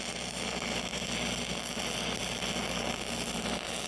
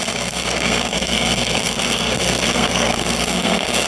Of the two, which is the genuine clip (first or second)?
first